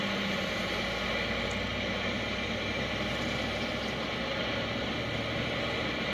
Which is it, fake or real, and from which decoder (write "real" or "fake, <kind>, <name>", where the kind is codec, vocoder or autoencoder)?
real